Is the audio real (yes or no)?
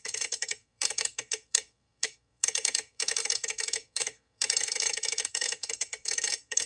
no